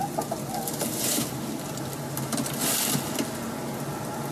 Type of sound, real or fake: real